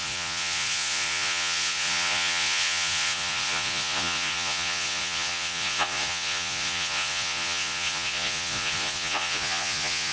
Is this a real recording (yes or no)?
no